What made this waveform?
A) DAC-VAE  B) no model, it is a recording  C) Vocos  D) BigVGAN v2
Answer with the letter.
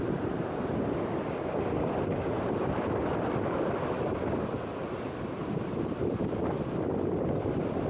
B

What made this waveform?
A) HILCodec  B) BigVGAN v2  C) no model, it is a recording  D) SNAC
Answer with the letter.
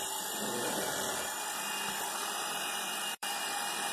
B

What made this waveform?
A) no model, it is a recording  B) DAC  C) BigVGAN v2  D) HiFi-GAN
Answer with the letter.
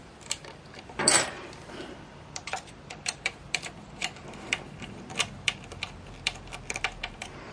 C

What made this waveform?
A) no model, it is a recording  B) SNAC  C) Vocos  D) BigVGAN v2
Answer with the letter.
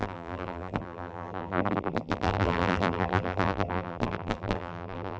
D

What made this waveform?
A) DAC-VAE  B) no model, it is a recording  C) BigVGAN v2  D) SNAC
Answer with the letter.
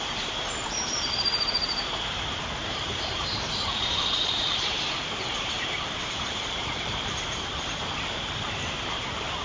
C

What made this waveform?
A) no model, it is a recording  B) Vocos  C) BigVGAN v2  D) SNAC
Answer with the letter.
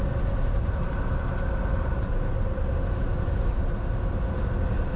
A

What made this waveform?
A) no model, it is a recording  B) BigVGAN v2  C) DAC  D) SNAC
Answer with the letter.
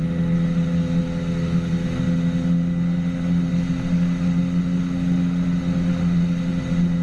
A